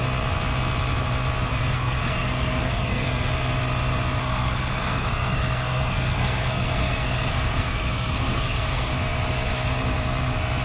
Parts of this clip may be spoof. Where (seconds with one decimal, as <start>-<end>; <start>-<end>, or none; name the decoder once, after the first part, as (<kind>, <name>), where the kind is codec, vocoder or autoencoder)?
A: 1.5-3.3 (codec, SNAC); 4.2-8.9